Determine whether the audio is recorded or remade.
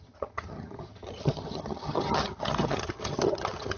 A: remade